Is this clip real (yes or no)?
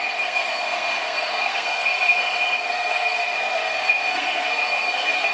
no